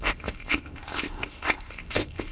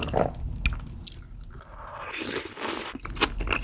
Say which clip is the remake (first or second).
first